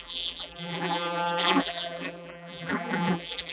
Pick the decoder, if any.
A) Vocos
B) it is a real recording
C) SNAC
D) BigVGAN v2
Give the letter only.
D